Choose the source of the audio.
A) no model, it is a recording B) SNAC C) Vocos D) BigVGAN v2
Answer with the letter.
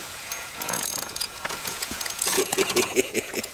C